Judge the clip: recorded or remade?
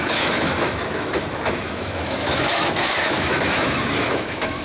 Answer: remade